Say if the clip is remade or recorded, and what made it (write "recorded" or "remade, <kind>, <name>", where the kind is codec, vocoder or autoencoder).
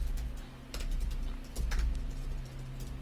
recorded